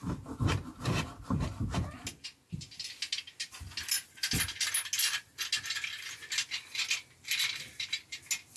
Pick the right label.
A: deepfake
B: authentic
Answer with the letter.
B